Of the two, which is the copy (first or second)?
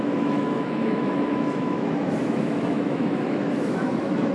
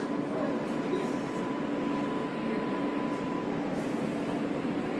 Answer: first